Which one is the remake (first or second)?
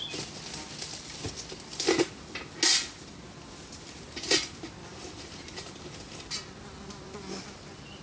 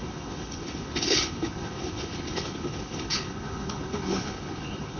second